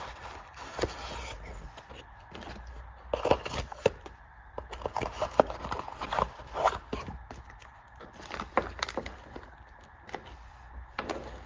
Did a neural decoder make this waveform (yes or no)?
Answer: no